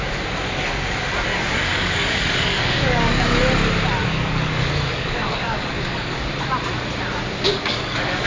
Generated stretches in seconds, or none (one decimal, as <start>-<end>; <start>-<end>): 1.3-3.4; 4.0-6.3; 7.5-8.3